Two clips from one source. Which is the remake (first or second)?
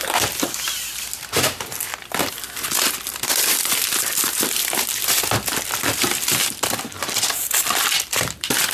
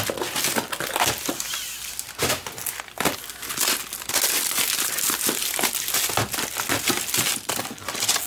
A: first